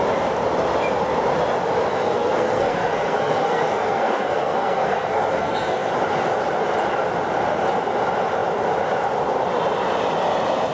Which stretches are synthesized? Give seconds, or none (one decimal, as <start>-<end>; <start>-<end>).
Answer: 1.9-5.9